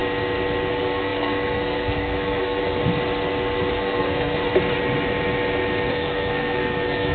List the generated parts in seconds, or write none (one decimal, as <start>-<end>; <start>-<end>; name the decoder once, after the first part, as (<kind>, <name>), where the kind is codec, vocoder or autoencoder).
0.7-2.8 (codec, SNAC); 3.7-4.4; 5.9-7.1